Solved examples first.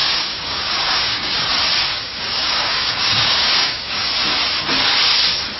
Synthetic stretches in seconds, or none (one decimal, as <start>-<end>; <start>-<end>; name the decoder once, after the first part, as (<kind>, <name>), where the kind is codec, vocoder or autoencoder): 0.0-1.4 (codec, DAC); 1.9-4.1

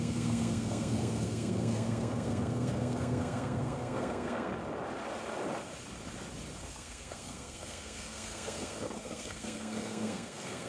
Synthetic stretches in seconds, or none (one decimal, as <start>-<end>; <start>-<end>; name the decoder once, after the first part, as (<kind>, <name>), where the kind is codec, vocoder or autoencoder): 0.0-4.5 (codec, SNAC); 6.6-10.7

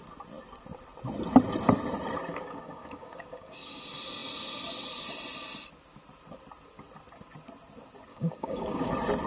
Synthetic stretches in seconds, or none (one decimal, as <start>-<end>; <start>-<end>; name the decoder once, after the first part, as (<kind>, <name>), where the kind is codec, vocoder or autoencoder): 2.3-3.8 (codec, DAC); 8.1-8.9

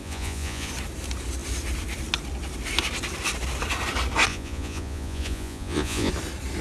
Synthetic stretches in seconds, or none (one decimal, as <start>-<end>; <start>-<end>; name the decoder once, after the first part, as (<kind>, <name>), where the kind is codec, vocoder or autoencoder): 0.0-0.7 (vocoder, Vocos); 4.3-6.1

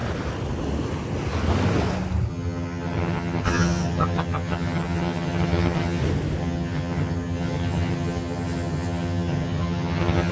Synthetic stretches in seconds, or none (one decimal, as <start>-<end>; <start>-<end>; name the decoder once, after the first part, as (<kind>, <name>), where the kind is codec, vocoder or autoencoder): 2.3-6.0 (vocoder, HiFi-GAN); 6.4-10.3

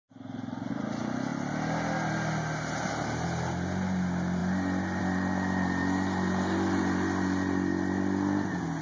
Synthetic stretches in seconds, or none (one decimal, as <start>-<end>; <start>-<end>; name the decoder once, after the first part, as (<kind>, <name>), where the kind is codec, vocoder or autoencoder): none

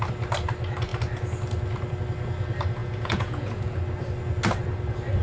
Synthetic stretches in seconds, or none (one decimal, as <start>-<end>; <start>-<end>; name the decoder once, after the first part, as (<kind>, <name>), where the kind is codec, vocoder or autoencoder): 2.8-3.8 (vocoder, Vocos)

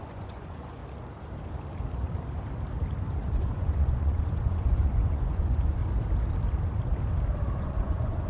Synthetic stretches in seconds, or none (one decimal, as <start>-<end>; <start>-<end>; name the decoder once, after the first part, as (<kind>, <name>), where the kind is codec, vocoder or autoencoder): 0.0-0.8 (vocoder, Vocos); 3.2-5.8; 7.6-8.3